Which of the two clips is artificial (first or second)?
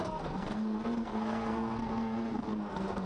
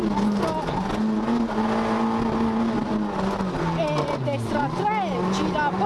first